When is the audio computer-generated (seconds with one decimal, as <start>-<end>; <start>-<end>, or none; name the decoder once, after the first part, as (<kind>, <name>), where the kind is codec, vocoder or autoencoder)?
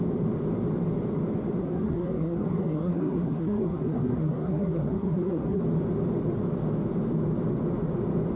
1.6-5.6 (codec, SNAC)